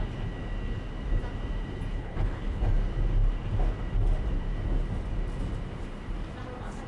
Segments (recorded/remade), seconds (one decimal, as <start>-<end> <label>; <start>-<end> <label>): 0.0-1.9 recorded; 1.9-2.6 remade; 2.6-6.9 recorded